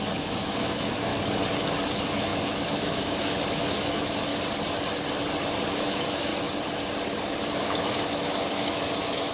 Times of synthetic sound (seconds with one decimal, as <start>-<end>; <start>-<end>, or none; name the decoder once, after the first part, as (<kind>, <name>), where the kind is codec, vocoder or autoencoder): 0.0-1.1 (autoencoder, DAC-VAE); 1.9-4.3; 5.7-6.3; 7.2-9.3

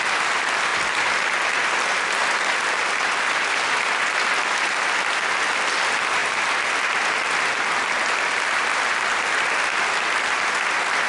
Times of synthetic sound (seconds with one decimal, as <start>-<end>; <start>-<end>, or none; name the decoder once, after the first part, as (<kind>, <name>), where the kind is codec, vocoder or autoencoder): none

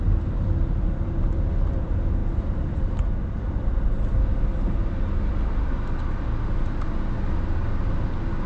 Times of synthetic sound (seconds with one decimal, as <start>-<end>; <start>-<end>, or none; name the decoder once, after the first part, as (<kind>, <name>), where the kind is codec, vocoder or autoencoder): 2.2-4.1 (vocoder, BigVGAN v2)